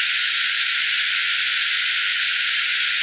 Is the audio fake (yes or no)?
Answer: yes